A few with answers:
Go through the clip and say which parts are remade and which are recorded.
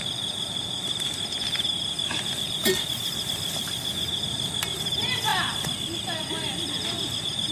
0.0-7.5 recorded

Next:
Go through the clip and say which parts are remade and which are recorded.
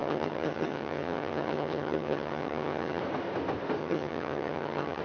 0.0-3.0 remade; 3.0-3.8 recorded; 3.8-5.0 remade